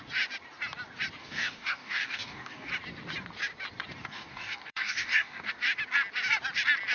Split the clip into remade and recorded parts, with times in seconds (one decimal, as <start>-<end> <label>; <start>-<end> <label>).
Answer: 0.0-1.2 recorded; 1.2-2.7 remade; 2.7-4.0 recorded; 4.0-5.5 remade; 5.5-6.9 recorded